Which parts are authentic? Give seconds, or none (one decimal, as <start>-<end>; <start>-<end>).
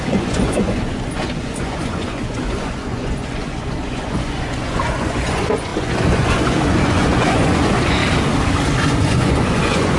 8.0-8.8